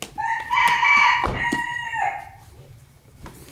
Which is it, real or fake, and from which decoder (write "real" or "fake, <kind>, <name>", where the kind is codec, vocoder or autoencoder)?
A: real